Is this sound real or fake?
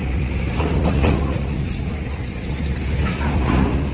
fake